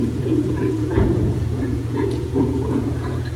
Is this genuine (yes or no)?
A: no